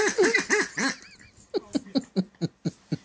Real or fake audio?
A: real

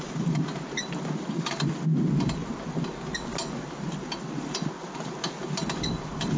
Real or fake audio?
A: real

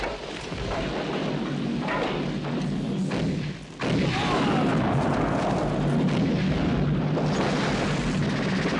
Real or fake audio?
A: real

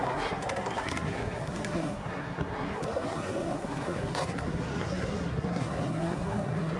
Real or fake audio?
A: fake